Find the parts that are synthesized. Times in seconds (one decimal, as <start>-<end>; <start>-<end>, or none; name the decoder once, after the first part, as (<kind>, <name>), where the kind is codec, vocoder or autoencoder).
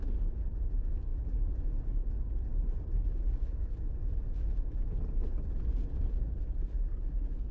none